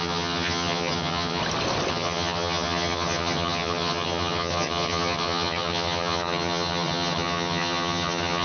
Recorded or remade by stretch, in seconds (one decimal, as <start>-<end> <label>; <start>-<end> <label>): 0.0-1.4 remade; 1.4-1.9 recorded; 1.9-8.4 remade